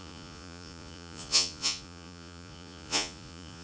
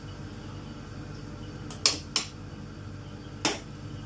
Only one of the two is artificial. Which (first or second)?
first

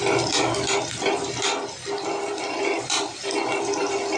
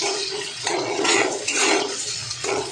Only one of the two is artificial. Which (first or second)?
second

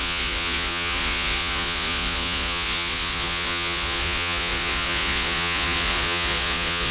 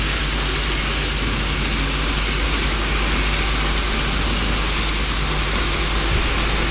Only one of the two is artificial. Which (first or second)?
first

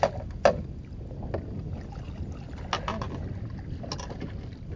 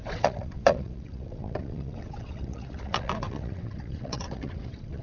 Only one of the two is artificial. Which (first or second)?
second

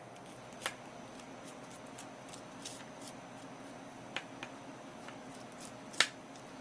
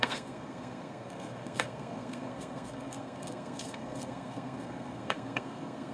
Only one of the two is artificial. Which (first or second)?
second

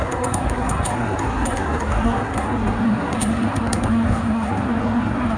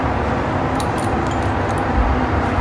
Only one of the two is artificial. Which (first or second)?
first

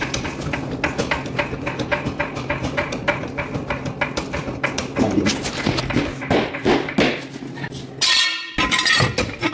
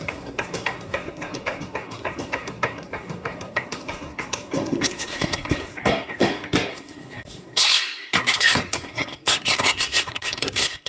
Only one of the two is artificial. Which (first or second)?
second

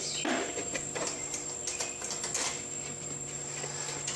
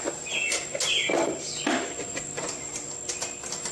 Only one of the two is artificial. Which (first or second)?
first